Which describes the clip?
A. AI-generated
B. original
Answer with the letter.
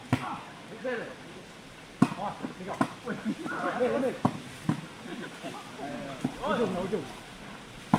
B